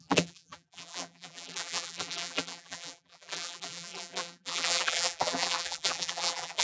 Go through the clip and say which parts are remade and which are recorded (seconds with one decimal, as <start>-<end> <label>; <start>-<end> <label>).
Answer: 0.0-6.6 remade